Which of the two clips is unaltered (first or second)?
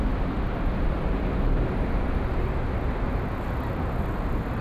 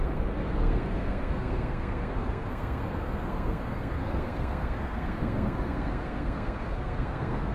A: first